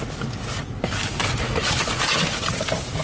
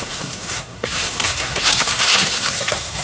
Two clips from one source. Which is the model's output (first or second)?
second